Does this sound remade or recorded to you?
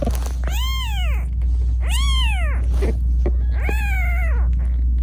recorded